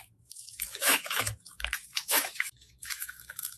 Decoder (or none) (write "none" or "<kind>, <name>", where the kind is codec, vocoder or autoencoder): autoencoder, DAC-VAE